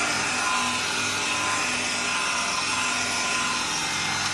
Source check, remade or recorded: recorded